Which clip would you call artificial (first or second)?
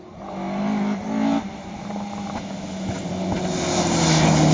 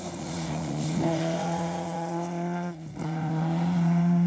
second